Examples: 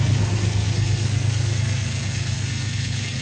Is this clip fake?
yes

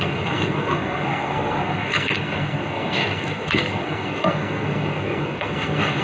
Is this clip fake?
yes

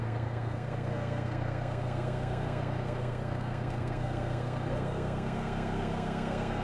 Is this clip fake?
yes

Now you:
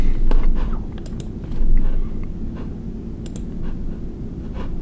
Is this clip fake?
no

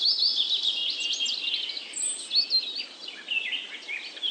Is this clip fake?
no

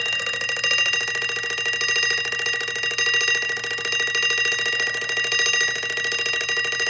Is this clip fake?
no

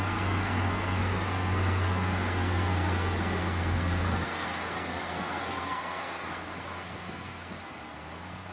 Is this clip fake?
yes